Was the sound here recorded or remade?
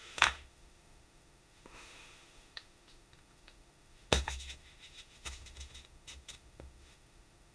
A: remade